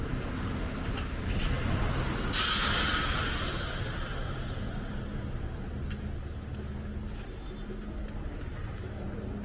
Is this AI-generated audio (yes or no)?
no